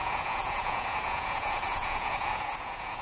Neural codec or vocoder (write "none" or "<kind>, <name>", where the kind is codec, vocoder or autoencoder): vocoder, Vocos